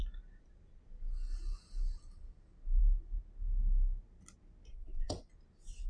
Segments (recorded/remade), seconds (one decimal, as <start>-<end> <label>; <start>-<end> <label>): 0.0-4.7 recorded; 4.7-5.3 remade; 5.3-5.9 recorded